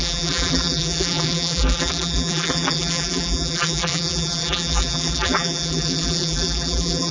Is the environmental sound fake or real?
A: fake